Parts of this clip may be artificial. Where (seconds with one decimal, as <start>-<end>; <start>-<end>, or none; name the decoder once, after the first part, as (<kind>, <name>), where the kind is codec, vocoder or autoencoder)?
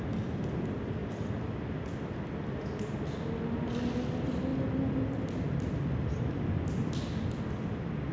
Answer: none